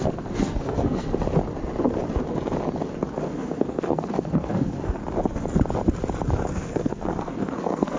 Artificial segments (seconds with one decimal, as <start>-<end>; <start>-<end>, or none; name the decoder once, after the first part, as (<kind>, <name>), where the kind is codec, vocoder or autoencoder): 0.0-1.1 (codec, SNAC); 3.2-5.0; 6.5-8.0